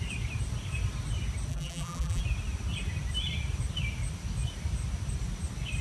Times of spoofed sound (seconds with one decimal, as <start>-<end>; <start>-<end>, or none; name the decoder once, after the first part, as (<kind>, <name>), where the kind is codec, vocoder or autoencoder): 1.5-2.2 (vocoder, BigVGAN v2)